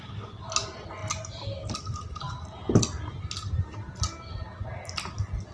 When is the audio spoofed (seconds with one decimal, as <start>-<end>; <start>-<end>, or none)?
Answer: none